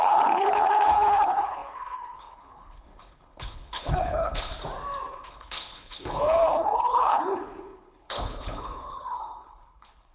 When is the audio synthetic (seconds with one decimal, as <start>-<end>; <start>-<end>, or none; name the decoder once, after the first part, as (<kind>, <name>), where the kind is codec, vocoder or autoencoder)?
0.0-4.5 (codec, HILCodec); 5.1-10.1